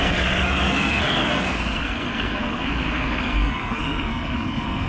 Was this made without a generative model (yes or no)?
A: no